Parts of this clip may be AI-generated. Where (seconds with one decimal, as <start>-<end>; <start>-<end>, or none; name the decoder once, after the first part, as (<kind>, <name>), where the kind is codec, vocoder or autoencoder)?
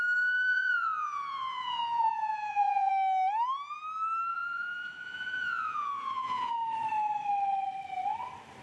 0.5-2.9 (vocoder, Vocos); 4.3-6.5